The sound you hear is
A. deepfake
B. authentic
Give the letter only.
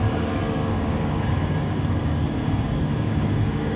A